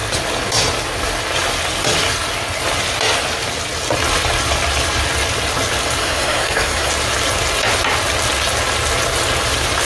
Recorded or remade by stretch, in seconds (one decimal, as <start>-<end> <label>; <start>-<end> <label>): 0.0-6.0 recorded; 6.0-6.9 remade; 6.9-9.8 recorded